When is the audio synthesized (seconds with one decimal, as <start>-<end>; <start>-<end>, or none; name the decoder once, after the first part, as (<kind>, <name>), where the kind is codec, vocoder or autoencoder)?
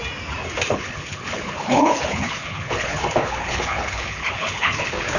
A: 0.7-5.2 (codec, HILCodec)